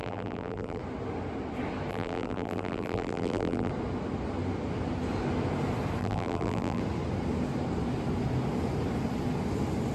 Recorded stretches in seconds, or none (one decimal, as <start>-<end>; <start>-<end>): 0.8-1.9; 3.7-6.0; 6.8-9.9